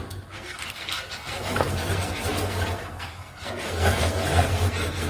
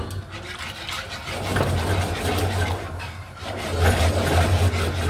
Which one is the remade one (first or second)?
first